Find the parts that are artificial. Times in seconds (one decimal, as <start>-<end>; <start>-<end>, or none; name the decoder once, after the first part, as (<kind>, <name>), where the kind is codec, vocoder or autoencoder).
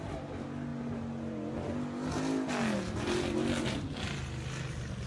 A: none